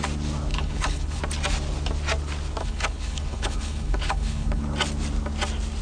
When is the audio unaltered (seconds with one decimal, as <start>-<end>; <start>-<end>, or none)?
0.0-0.5; 1.2-2.6; 4.6-5.8